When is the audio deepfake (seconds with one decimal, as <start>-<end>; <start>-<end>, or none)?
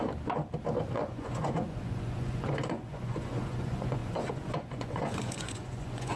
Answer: 0.9-6.2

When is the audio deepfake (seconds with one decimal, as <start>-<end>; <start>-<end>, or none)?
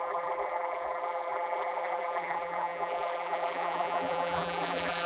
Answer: 0.0-5.1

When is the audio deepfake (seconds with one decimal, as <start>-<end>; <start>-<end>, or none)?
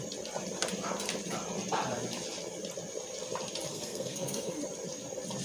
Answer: 3.7-4.6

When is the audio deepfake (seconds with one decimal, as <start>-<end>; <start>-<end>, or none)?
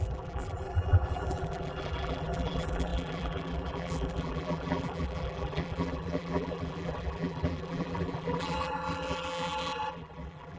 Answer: 0.0-10.6